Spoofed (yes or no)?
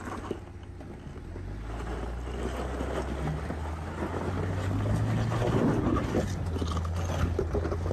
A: no